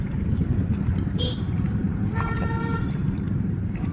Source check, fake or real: fake